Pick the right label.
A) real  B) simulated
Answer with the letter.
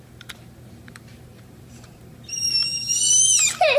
B